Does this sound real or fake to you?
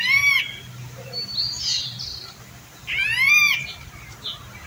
real